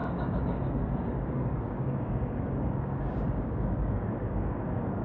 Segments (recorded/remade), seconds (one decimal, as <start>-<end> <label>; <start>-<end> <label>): 0.0-5.0 remade